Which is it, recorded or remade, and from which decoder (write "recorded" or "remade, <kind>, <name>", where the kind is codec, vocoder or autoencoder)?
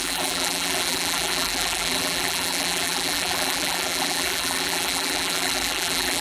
remade, vocoder, BigVGAN v2